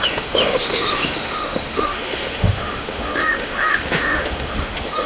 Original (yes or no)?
no